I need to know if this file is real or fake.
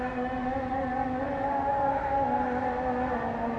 real